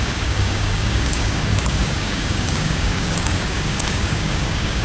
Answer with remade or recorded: remade